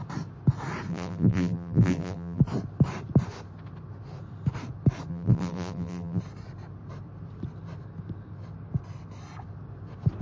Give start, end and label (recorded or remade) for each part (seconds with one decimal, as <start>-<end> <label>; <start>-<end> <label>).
0.0-0.9 recorded; 0.9-2.4 remade; 2.4-5.1 recorded; 5.1-6.2 remade; 6.2-10.2 recorded